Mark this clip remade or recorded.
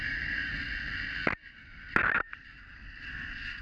recorded